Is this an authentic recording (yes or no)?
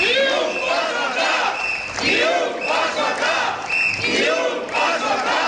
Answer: yes